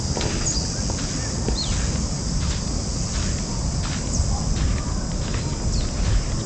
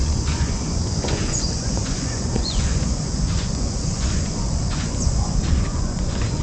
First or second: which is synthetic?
second